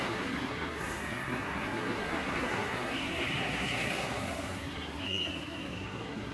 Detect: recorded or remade remade